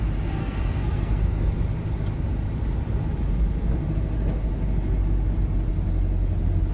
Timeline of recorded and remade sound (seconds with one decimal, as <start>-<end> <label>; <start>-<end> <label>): 0.0-0.4 recorded; 0.4-1.5 remade; 1.5-6.7 recorded